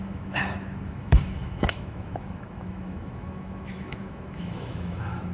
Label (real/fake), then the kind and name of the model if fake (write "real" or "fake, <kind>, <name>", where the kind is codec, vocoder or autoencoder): fake, autoencoder, DAC-VAE